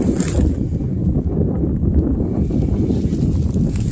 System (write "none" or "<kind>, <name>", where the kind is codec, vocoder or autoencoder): none